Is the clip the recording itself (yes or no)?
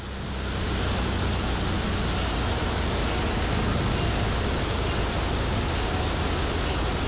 yes